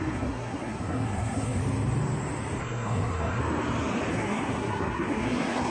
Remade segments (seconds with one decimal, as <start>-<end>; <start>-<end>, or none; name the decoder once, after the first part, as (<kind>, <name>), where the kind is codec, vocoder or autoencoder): 0.0-1.6 (codec, SNAC); 2.6-3.4; 4.1-5.7